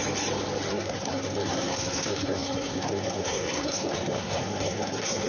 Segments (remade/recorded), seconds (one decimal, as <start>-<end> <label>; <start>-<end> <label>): 0.0-0.7 recorded; 0.7-5.3 remade